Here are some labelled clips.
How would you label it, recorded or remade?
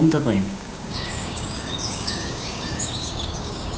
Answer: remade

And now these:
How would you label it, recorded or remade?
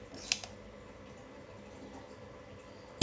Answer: recorded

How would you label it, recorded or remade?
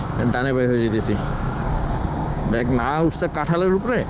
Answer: remade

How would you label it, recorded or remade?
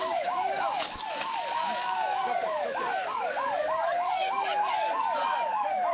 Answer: remade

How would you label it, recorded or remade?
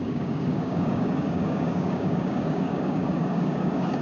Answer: remade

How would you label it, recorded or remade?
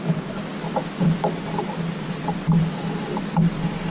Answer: recorded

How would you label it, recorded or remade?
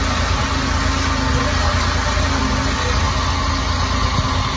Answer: recorded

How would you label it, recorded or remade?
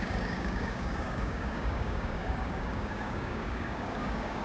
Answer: remade